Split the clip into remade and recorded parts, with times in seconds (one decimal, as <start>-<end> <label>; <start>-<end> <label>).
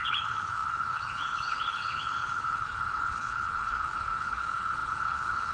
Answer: 0.0-5.5 remade